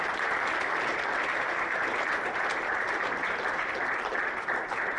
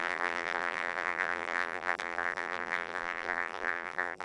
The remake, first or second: second